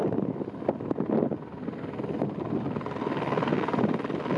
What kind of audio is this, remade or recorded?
recorded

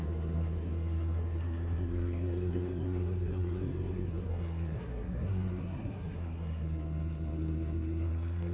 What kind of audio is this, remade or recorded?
remade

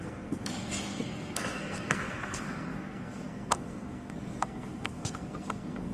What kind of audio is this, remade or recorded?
remade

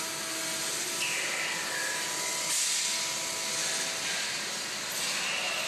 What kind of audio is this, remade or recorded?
recorded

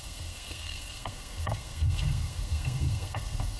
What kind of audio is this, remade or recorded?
remade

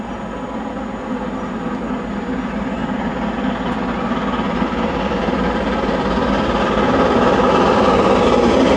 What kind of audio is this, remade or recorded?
recorded